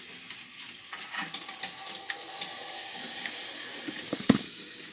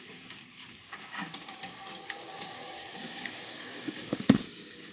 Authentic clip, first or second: first